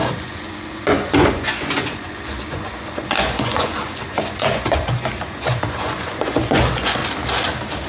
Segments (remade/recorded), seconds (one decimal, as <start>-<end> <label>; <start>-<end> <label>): 0.0-7.0 remade; 7.0-7.9 recorded